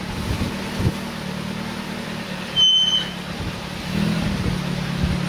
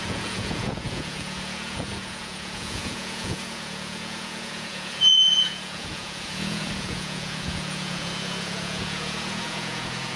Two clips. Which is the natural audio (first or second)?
first